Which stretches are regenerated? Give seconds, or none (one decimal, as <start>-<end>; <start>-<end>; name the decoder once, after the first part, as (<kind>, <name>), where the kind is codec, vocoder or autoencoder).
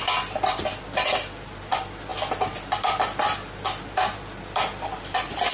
0.0-5.5 (vocoder, BigVGAN v2)